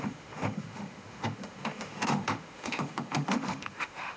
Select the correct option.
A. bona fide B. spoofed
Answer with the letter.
B